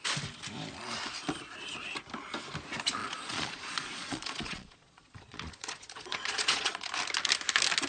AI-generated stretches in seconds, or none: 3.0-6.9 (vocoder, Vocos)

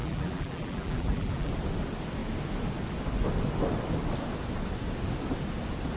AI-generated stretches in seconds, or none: 0.0-1.5 (vocoder, BigVGAN v2)

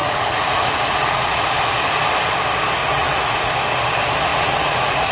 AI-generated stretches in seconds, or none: 0.0-1.5 (vocoder, Vocos); 2.8-3.5; 4.3-5.1

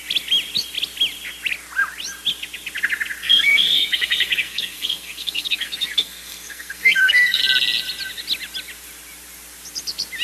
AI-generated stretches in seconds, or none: 3.2-7.4 (codec, SNAC)